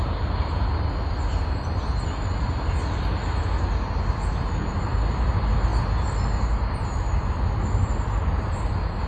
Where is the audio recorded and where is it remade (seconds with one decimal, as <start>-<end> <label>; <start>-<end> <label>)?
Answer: 0.0-9.1 recorded